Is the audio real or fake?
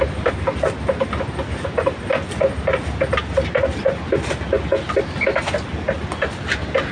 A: real